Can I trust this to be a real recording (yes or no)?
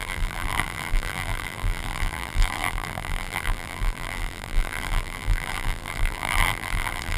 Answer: no